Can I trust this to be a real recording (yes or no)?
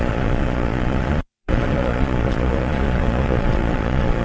no